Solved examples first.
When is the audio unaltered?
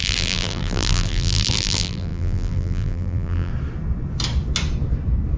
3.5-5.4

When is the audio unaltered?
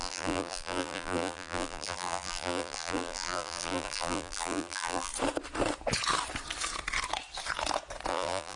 5.1-8.1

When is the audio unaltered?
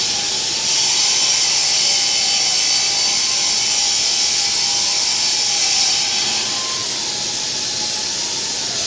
0.0-8.9